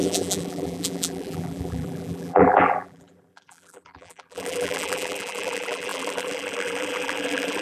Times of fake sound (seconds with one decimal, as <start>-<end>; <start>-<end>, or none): 0.0-7.6